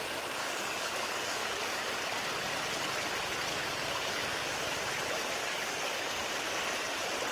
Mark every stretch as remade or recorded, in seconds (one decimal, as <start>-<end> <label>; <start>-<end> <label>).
0.0-0.4 recorded; 0.4-1.8 remade; 1.8-3.5 recorded; 3.5-4.6 remade; 4.6-5.4 recorded; 5.4-6.3 remade; 6.3-7.3 recorded

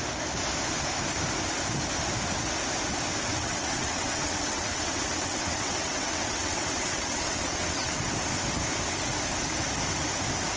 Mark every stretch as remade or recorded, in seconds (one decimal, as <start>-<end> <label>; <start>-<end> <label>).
0.0-3.3 recorded; 3.3-8.0 remade; 8.0-10.6 recorded

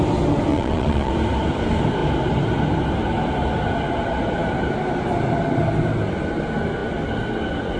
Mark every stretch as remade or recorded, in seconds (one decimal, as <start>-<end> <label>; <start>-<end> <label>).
0.0-0.5 recorded; 0.5-1.1 remade; 1.1-7.8 recorded

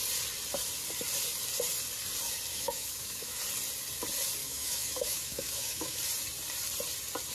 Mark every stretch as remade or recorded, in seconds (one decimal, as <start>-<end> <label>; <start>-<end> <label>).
0.0-2.5 recorded; 2.5-3.4 remade; 3.4-4.4 recorded; 4.4-6.0 remade; 6.0-7.3 recorded